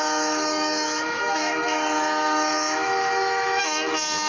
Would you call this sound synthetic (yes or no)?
yes